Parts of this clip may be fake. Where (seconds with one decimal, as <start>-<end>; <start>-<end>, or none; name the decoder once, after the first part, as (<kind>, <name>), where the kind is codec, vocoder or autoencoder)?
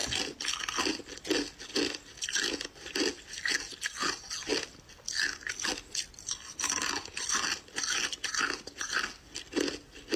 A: none